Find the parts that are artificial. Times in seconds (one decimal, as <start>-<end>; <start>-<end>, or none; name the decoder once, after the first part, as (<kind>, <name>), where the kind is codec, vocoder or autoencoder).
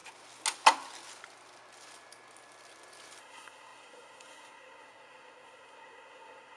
3.2-6.6 (codec, SNAC)